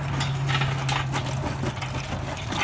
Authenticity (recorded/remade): recorded